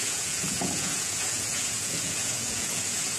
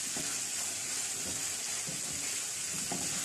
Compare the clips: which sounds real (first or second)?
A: second